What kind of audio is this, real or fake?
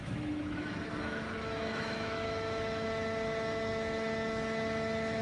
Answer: fake